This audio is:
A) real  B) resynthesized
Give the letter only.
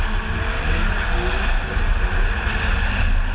A